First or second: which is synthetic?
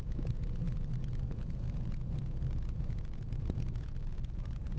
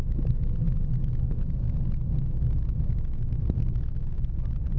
first